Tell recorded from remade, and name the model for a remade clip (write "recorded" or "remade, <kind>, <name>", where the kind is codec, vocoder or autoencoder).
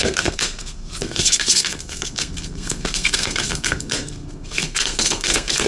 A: remade, codec, SNAC